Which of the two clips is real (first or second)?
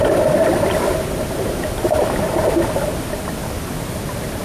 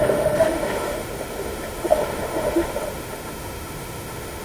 first